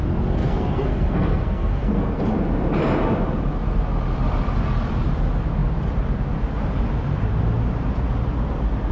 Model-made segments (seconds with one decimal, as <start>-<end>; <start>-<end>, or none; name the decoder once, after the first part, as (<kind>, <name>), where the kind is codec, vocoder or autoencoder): 0.4-2.2 (codec, SNAC)